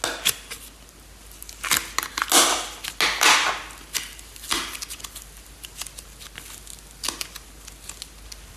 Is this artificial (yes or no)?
no